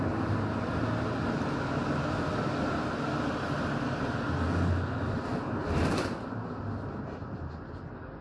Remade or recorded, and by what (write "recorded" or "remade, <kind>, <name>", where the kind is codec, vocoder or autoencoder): recorded